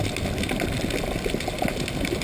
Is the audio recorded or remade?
recorded